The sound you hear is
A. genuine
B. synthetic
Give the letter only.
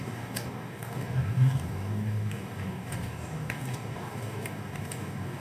B